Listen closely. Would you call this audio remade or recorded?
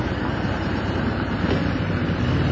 remade